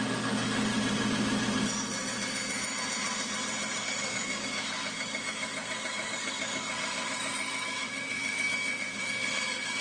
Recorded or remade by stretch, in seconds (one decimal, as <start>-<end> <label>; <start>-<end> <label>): 0.0-0.7 remade; 0.7-3.8 recorded; 3.8-9.8 remade